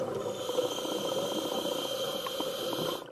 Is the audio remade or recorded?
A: recorded